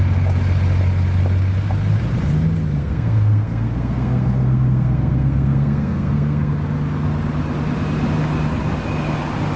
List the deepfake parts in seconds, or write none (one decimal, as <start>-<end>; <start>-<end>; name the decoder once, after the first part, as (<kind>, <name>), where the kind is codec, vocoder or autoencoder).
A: 2.8-6.5 (codec, SNAC)